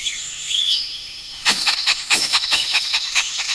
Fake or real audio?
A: fake